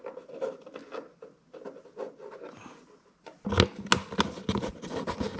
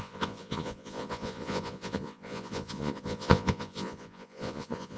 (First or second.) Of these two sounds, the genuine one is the first